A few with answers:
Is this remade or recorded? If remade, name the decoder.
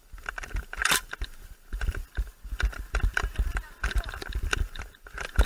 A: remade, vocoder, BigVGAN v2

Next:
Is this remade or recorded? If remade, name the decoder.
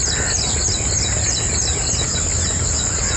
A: recorded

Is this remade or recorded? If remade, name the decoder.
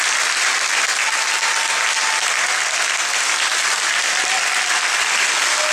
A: recorded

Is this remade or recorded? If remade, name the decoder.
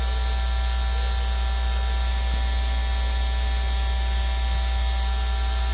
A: recorded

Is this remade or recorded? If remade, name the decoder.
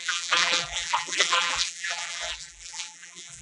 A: remade, vocoder, BigVGAN v2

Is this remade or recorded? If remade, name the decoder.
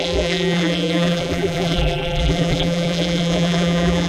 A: remade, vocoder, BigVGAN v2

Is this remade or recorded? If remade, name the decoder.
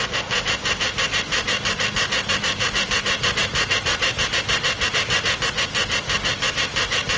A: remade, vocoder, BigVGAN v2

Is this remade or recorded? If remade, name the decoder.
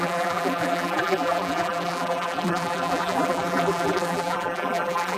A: remade, vocoder, BigVGAN v2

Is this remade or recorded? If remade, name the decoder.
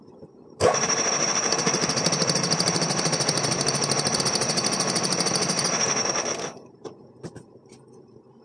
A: remade, vocoder, BigVGAN v2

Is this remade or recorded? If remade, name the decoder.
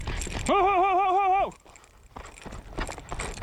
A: recorded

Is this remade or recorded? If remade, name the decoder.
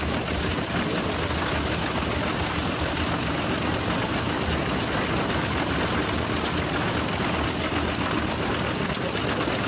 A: recorded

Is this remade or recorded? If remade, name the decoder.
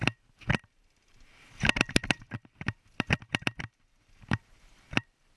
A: remade, vocoder, BigVGAN v2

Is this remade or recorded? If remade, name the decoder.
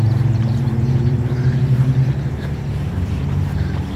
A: remade, vocoder, BigVGAN v2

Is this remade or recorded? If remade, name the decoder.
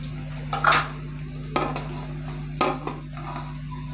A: recorded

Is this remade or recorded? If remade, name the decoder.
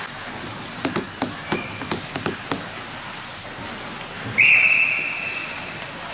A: recorded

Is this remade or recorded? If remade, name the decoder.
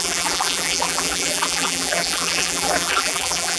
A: remade, vocoder, BigVGAN v2